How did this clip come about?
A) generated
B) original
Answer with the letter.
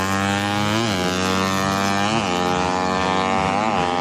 B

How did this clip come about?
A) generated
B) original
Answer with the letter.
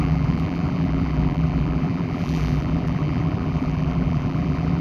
A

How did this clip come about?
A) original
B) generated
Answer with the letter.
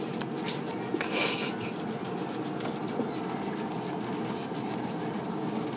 A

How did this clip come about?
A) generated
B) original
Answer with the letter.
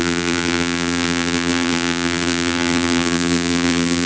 A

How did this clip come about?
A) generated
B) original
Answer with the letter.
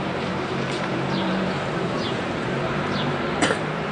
A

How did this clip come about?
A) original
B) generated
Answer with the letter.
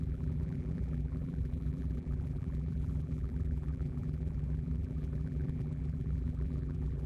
B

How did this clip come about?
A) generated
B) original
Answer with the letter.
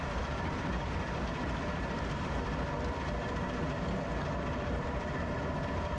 A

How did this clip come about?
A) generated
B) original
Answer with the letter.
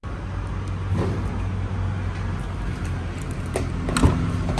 B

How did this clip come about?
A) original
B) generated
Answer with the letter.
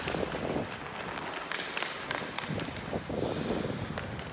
A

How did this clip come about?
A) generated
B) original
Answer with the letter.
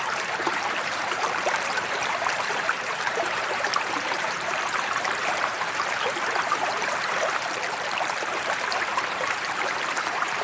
A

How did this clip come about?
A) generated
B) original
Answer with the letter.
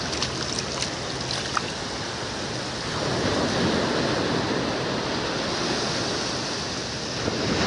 B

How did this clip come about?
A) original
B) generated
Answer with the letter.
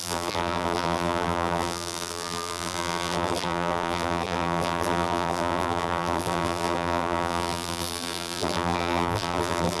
B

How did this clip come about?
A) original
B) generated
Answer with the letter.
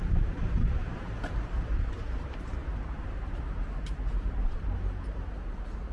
B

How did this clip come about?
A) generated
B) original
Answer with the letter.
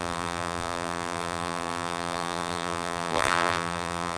A